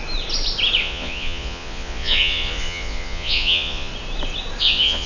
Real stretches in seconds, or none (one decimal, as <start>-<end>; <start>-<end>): 0.0-0.8; 3.9-4.6